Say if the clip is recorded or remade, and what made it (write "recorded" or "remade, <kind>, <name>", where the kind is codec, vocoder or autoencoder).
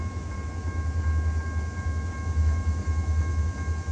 remade, autoencoder, DAC-VAE